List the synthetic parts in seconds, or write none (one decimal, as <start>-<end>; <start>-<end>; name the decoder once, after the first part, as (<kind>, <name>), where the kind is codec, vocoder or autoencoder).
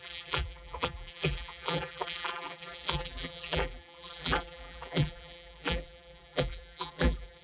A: 0.0-7.4 (vocoder, BigVGAN v2)